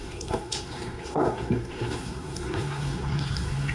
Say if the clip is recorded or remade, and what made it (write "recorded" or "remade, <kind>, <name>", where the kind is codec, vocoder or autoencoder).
remade, codec, SNAC